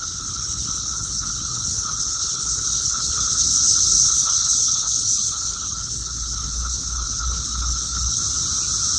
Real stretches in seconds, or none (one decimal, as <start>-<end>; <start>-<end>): 8.2-9.0